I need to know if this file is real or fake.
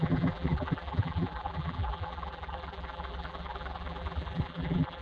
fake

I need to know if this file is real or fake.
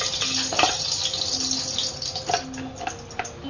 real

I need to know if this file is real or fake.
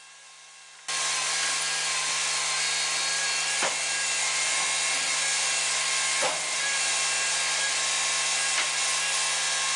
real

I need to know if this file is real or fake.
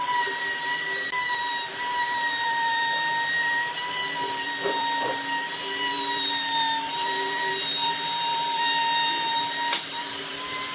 fake